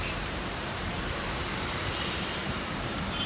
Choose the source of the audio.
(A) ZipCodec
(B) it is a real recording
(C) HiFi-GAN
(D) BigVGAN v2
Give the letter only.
D